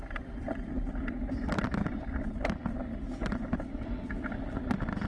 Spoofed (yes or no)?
yes